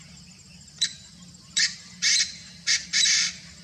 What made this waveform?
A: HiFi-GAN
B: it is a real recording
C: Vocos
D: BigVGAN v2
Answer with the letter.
D